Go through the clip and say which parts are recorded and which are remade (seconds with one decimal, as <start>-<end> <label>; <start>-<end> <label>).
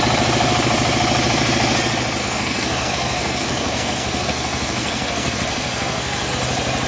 0.0-2.2 recorded; 2.2-6.3 remade; 6.3-6.9 recorded